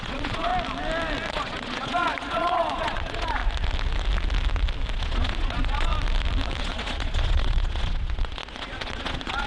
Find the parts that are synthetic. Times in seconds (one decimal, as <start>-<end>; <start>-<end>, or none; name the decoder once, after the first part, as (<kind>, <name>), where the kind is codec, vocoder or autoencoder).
0.0-0.5 (vocoder, Vocos); 1.3-3.4; 4.9-5.9; 6.6-9.5